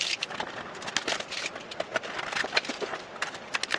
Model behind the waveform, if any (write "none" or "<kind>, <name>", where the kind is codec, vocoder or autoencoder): none